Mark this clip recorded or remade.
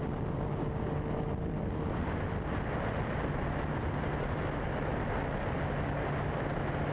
recorded